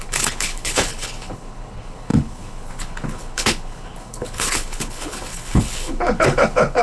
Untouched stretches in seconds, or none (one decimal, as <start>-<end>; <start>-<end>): none